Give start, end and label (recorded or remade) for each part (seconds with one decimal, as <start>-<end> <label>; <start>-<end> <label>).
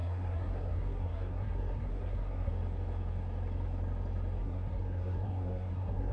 0.0-2.5 remade; 2.5-4.4 recorded; 4.4-6.1 remade